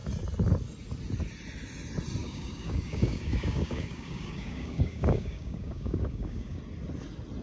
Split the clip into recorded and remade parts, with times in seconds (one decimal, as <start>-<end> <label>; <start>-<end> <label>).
0.0-2.2 recorded; 2.2-6.6 remade; 6.6-7.4 recorded

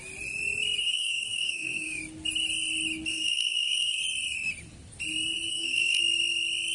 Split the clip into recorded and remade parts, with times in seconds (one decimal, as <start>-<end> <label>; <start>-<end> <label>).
0.0-0.8 recorded; 0.8-2.0 remade; 2.0-3.1 recorded; 3.1-4.0 remade; 4.0-5.5 recorded; 5.5-6.0 remade; 6.0-6.7 recorded

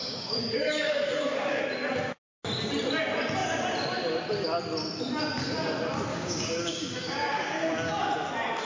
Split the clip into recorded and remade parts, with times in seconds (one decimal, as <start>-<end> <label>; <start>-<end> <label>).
0.0-1.6 remade; 1.6-6.1 recorded; 6.1-7.9 remade; 7.9-8.6 recorded

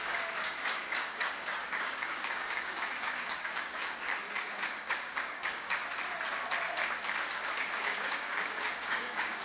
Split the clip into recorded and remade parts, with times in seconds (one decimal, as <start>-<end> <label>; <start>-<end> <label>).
0.0-5.8 remade; 5.8-7.5 recorded; 7.5-9.4 remade